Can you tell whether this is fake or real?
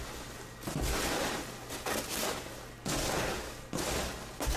real